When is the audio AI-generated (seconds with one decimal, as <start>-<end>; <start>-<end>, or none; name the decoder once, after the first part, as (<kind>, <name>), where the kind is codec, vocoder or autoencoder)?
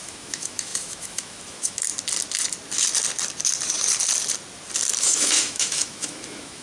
0.0-1.9 (autoencoder, DAC-VAE); 5.0-6.6